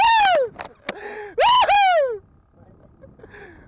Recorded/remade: recorded